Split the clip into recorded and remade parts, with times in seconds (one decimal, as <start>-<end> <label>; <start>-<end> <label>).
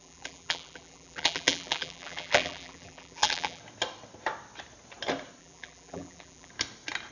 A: 0.0-3.6 remade; 3.6-5.4 recorded; 5.4-6.5 remade; 6.5-7.1 recorded